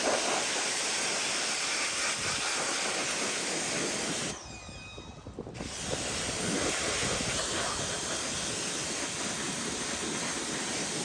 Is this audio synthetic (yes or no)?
no